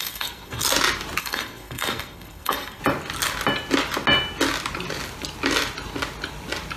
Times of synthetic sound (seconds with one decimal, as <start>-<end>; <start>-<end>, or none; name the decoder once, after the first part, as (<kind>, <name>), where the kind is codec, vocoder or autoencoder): 0.0-0.6 (codec, SNAC); 1.2-2.8